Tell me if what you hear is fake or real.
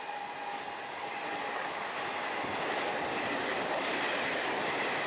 real